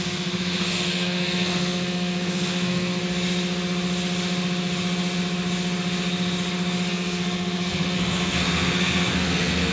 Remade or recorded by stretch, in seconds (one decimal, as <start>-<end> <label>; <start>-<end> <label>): 0.0-3.0 remade; 3.0-6.9 recorded; 6.9-9.7 remade